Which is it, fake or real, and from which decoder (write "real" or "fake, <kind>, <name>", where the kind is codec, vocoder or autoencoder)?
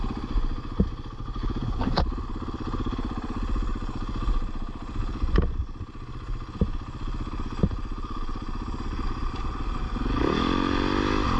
real